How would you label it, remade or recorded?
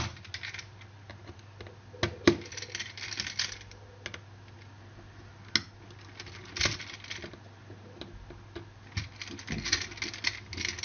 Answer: recorded